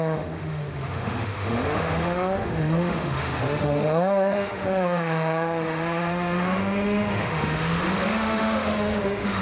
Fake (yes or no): yes